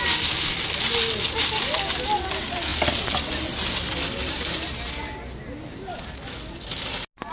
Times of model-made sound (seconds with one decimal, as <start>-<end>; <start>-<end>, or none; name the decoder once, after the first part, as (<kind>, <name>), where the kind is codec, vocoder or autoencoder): none